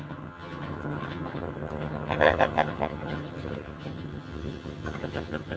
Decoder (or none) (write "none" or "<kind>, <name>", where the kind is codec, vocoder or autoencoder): vocoder, HiFi-GAN